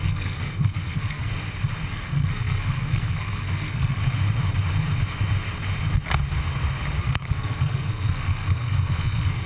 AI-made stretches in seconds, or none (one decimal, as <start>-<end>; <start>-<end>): 0.0-1.3; 1.9-4.0; 7.0-9.5